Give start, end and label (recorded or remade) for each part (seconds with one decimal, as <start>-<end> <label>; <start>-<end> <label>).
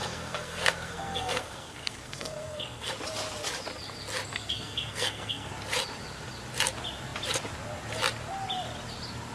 0.0-2.9 remade; 2.9-4.3 recorded; 4.3-5.5 remade; 5.5-9.3 recorded